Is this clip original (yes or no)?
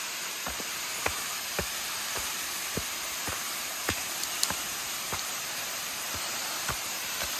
no